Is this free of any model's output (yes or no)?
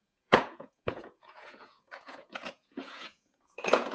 no